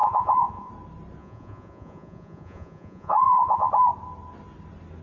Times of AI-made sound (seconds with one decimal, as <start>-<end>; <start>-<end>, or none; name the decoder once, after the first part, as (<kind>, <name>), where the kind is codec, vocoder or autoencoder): 0.0-0.7 (vocoder, Vocos); 1.2-3.7